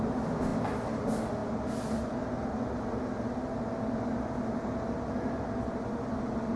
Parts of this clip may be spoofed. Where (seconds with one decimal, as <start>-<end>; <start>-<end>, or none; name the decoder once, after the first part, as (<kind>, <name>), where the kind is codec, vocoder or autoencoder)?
none